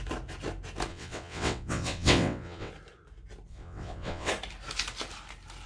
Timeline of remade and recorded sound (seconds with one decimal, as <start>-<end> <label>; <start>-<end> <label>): 0.0-0.9 recorded; 0.9-2.7 remade; 2.7-3.5 recorded; 3.5-4.3 remade; 4.3-5.7 recorded